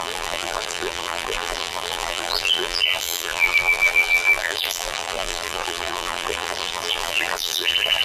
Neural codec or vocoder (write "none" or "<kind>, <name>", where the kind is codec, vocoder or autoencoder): vocoder, BigVGAN v2